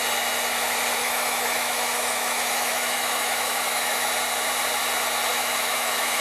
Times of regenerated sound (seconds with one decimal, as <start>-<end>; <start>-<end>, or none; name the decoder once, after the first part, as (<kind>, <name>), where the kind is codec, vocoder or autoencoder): 1.0-4.1 (autoencoder, DAC-VAE); 5.3-6.2